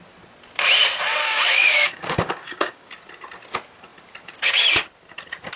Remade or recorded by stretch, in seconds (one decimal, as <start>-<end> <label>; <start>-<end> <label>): 0.0-1.2 recorded; 1.2-2.9 remade; 2.9-5.6 recorded